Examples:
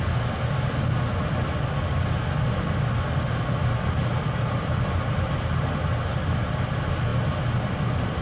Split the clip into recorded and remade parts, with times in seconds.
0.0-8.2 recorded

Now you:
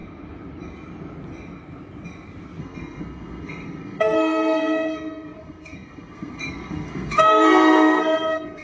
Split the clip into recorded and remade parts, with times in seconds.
0.0-2.6 recorded; 2.6-8.6 remade

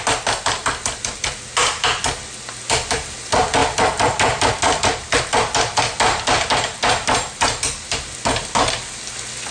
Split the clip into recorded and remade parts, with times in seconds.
0.0-9.5 recorded